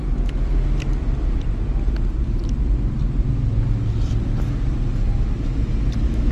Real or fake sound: real